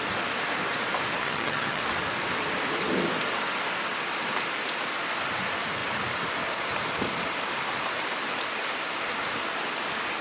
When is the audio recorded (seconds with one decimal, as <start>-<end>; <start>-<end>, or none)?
0.0-1.2; 1.8-10.2